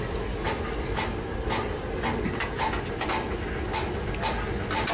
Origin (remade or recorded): recorded